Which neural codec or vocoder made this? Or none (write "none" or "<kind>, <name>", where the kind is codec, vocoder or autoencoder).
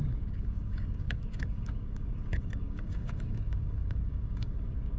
codec, DAC